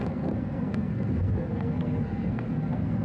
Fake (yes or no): yes